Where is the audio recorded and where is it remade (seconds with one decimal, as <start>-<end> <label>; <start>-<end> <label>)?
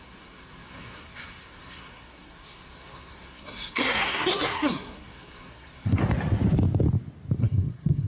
0.0-6.0 remade; 6.0-7.4 recorded; 7.4-8.1 remade